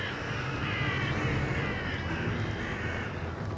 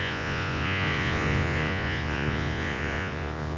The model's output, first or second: second